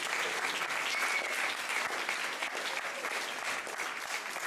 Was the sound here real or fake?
real